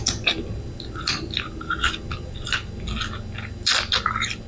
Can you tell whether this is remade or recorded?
recorded